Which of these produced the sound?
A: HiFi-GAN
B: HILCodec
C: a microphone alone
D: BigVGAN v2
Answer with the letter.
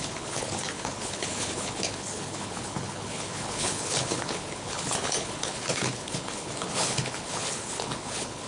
B